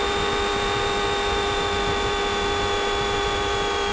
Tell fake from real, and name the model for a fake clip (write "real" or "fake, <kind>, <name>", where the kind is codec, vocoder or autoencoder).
real